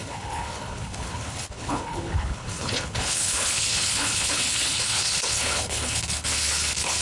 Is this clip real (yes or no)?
no